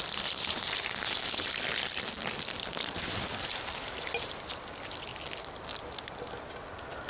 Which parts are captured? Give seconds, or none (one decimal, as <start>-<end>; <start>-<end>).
5.1-7.1